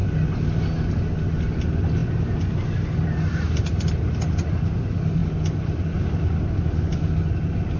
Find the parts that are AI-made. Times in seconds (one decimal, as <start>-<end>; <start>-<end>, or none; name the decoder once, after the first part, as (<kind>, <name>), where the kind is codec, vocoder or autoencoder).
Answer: none